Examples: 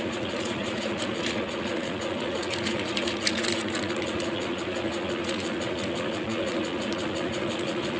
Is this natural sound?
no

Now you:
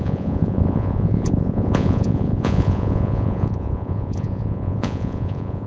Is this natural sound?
no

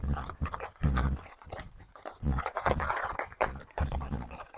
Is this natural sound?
no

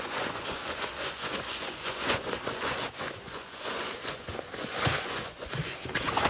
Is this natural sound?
no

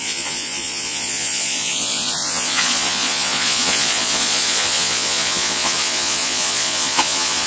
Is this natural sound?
no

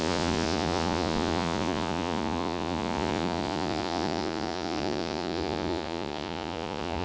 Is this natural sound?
no